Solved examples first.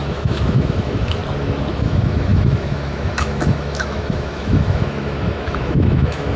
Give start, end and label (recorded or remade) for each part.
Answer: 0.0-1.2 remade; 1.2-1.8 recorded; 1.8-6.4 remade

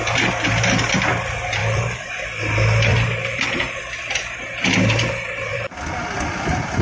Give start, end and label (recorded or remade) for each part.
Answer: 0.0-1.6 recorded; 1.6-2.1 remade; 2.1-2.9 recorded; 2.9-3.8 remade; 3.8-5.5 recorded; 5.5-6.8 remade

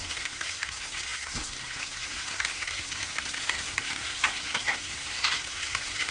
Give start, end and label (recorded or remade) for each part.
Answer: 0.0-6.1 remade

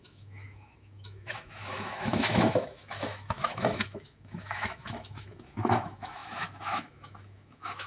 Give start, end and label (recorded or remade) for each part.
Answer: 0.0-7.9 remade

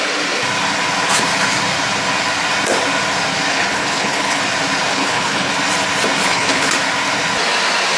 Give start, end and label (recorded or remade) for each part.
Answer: 0.0-3.5 recorded; 3.5-4.4 remade; 4.4-4.9 recorded; 4.9-5.5 remade; 5.5-6.2 recorded; 6.2-6.7 remade; 6.7-8.0 recorded